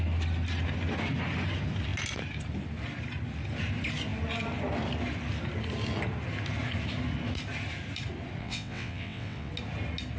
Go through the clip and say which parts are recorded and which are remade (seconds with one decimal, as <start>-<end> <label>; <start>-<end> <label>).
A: 0.0-8.4 recorded; 8.4-9.5 remade; 9.5-10.2 recorded